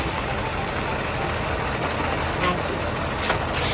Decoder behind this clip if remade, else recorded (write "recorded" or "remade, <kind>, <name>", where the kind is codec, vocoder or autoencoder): recorded